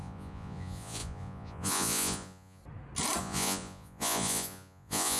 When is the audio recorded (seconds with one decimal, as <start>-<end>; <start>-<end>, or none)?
2.6-3.2